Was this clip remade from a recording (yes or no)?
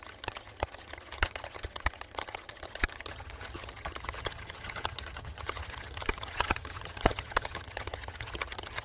yes